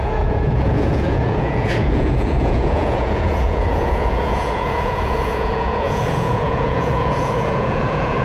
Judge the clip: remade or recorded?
remade